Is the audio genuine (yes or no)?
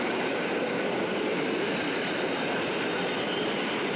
no